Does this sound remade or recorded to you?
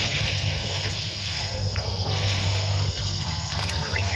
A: remade